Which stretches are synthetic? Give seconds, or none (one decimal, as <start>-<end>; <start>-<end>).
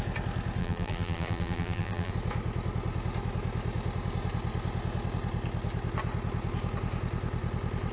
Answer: 0.6-2.1